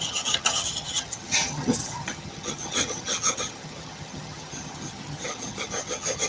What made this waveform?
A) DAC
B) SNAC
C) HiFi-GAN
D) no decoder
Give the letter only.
C